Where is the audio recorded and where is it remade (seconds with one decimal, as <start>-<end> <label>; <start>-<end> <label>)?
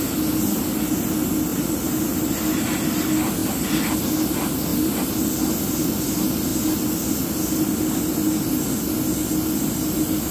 0.0-1.5 recorded; 1.5-2.4 remade; 2.4-4.7 recorded; 4.7-5.2 remade; 5.2-10.3 recorded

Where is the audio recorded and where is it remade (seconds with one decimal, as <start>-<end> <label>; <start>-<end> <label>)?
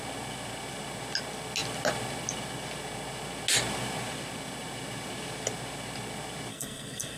0.0-6.5 recorded; 6.5-7.2 remade